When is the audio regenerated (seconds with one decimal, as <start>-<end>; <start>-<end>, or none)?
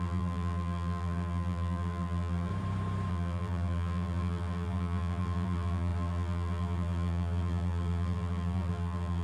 0.0-2.5; 3.1-9.2